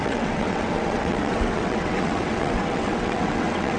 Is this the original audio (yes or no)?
no